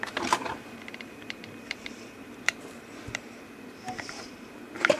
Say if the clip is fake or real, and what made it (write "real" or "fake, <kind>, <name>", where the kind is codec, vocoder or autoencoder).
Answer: fake, vocoder, BigVGAN v2